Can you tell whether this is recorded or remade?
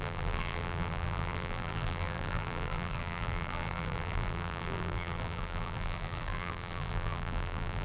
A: remade